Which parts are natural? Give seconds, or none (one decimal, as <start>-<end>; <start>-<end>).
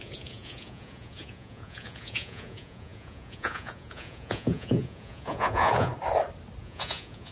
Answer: 5.9-6.6